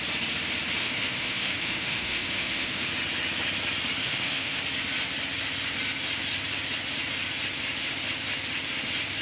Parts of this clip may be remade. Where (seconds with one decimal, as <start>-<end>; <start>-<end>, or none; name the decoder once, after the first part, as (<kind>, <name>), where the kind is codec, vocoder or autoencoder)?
0.8-2.9 (autoencoder, DAC-VAE); 4.0-4.6